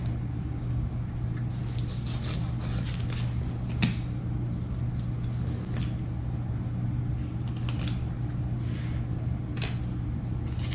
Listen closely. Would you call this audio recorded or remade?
recorded